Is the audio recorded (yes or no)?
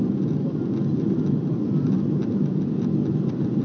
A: yes